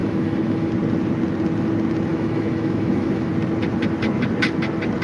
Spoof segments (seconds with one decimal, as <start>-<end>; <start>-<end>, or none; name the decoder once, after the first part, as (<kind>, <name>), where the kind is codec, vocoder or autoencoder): 0.0-0.7 (autoencoder, DAC-VAE); 2.1-3.3